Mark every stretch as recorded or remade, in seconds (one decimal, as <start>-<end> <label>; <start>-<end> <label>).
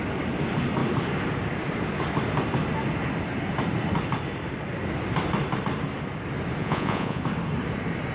0.0-6.6 recorded; 6.6-7.2 remade; 7.2-8.1 recorded